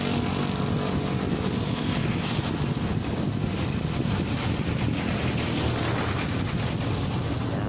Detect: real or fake real